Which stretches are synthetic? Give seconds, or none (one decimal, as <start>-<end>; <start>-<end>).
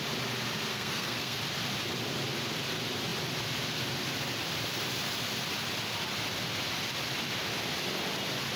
0.7-1.4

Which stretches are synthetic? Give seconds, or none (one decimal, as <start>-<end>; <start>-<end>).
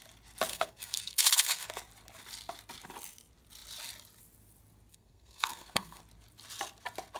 0.5-1.7; 4.9-6.0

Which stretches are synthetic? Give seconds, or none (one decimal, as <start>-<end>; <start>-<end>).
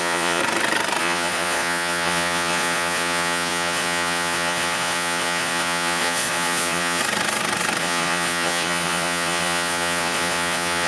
0.0-0.4; 1.0-7.0; 7.8-10.9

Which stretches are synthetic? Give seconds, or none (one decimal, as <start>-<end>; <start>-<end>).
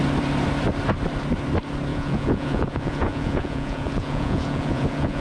1.9-5.2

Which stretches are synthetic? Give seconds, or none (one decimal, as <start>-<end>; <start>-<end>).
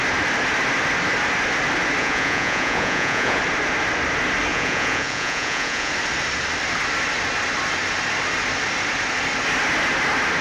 2.0-3.4; 4.5-5.9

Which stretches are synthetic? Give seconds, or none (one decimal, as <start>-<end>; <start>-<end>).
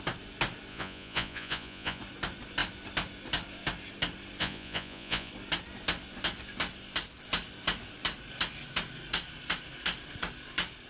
0.7-2.0; 4.4-5.3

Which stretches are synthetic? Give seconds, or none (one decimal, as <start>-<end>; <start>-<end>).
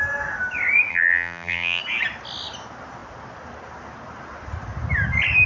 0.9-1.8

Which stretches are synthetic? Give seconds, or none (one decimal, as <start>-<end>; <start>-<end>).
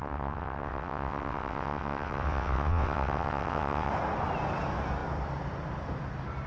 0.0-3.9